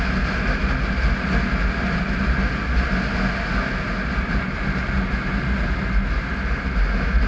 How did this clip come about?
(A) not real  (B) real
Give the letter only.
B